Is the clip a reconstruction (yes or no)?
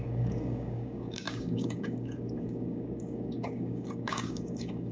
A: yes